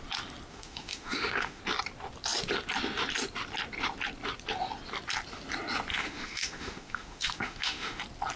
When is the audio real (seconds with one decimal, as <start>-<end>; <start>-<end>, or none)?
0.0-0.5; 1.6-5.9; 8.0-8.4